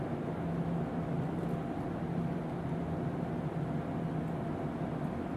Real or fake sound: real